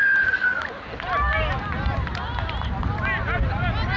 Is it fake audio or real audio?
real